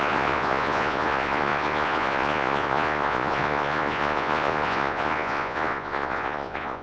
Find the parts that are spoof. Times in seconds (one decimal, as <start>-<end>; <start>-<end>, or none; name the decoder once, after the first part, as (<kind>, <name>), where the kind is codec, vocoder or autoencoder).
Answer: 0.0-6.8 (vocoder, Vocos)